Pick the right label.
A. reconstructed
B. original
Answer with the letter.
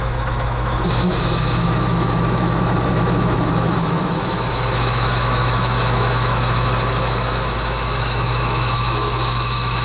A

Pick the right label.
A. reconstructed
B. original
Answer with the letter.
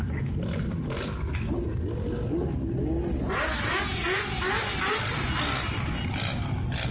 B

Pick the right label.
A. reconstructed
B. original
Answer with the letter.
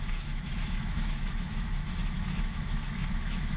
A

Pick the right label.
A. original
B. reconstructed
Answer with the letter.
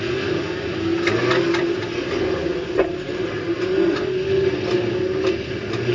A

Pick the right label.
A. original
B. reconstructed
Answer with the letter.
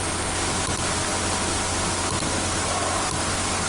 A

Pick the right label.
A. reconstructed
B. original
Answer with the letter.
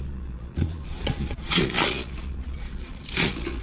A